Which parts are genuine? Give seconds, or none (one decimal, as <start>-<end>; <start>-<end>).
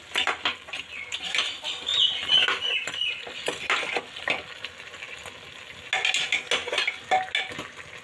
0.0-8.0